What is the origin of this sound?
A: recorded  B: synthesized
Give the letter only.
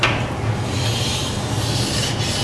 A